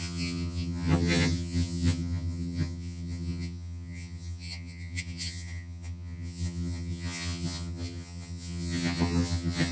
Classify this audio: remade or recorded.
remade